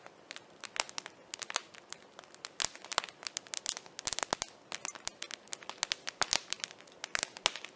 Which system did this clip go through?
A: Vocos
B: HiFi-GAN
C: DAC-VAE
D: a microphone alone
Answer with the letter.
D